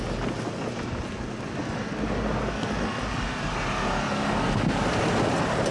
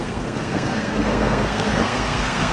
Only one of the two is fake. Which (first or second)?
second